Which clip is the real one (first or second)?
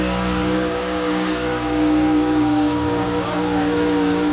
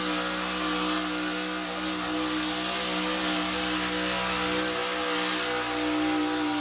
second